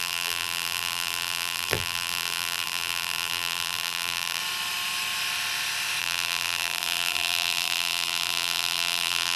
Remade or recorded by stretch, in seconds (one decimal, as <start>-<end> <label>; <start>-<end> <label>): 0.0-4.4 remade; 4.4-6.0 recorded; 6.0-9.4 remade